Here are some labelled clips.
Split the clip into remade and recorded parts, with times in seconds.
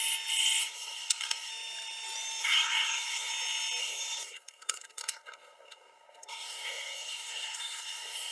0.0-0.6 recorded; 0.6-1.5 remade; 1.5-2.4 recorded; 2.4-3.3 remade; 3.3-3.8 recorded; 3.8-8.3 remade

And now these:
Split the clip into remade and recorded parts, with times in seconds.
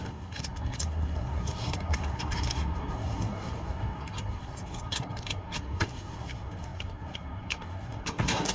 0.0-8.5 remade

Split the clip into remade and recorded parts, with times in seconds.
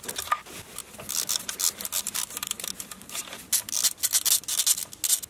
0.0-5.3 recorded